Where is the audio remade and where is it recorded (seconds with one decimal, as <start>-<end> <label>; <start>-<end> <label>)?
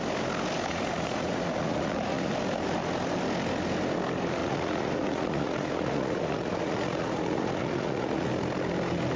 0.0-0.7 recorded; 0.7-2.3 remade; 2.3-4.4 recorded; 4.4-8.3 remade; 8.3-9.2 recorded